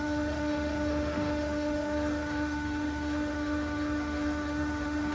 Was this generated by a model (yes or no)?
yes